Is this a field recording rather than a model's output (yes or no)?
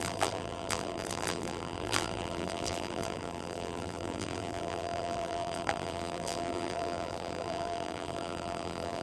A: no